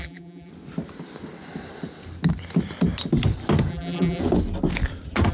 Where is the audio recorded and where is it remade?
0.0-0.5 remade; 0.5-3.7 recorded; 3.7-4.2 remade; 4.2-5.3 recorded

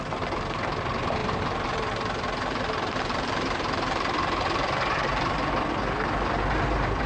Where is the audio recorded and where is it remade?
0.0-1.2 recorded; 1.2-5.5 remade; 5.5-7.1 recorded

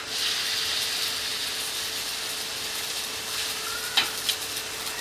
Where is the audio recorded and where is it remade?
0.0-1.3 recorded; 1.3-4.3 remade; 4.3-5.0 recorded

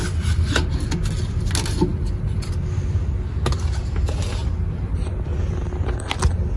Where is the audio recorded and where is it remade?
0.0-1.9 recorded; 1.9-2.5 remade; 2.5-4.4 recorded; 4.4-5.1 remade; 5.1-6.6 recorded

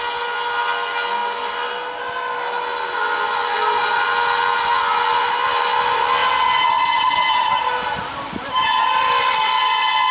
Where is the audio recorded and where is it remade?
0.0-6.2 recorded; 6.2-8.8 remade; 8.8-10.1 recorded

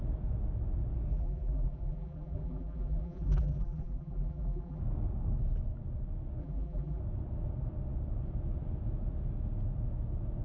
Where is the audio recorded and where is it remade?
0.0-1.1 recorded; 1.1-4.8 remade; 4.8-6.4 recorded; 6.4-7.0 remade; 7.0-10.4 recorded

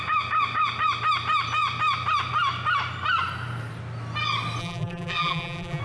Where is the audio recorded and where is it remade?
0.0-4.6 recorded; 4.6-5.8 remade

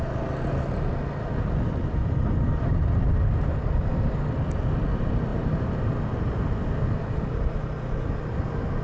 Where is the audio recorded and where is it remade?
0.0-5.3 recorded; 5.3-5.9 remade; 5.9-8.8 recorded